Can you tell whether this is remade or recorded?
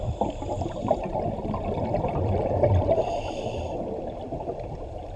remade